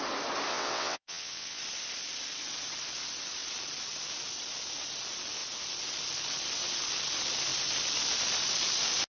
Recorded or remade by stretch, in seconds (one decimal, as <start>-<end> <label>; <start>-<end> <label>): 0.0-0.5 recorded; 0.5-1.6 remade; 1.6-9.2 recorded